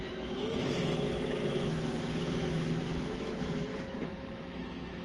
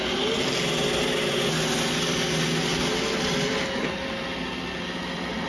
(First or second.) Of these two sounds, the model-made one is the first